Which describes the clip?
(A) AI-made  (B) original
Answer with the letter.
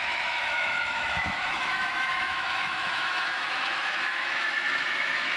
A